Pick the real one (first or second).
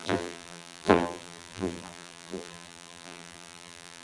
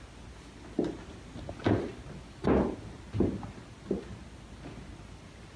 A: second